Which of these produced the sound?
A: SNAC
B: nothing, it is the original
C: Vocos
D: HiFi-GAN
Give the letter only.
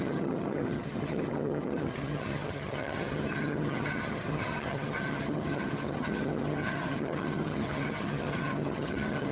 D